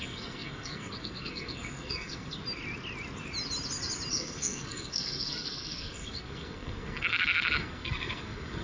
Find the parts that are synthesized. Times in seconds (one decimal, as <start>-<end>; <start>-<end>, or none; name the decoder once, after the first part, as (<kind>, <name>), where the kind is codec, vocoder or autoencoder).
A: 0.0-2.4 (codec, SNAC); 4.1-8.6